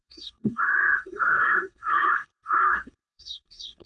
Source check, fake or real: fake